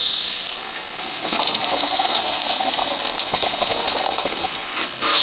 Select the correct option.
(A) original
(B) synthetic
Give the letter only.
B